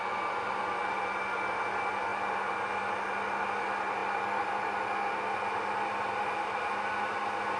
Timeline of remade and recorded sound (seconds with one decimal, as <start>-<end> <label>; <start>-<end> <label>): 0.0-7.6 recorded

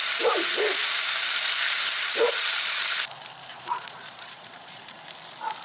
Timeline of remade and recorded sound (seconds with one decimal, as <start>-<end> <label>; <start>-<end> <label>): 0.0-3.5 recorded; 3.5-4.8 remade; 4.8-5.6 recorded

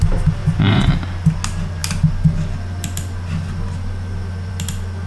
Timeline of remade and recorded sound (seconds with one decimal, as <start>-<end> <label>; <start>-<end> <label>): 0.0-0.4 recorded; 0.4-0.9 remade; 0.9-5.1 recorded

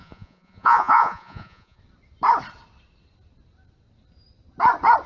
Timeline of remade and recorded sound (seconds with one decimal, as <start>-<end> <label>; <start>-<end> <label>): 0.0-1.8 remade; 1.8-5.1 recorded

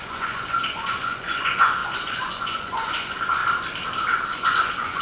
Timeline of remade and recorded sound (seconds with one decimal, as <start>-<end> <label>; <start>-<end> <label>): 0.0-3.4 remade; 3.4-4.3 recorded; 4.3-5.0 remade

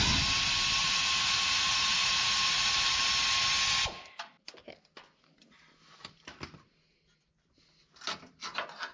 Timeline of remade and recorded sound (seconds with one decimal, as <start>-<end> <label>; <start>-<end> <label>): 0.0-0.8 recorded; 0.8-3.0 remade; 3.0-8.9 recorded